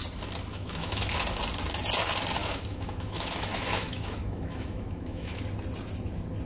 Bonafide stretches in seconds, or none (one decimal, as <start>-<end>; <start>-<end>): 0.0-0.5; 1.1-2.4; 5.4-6.5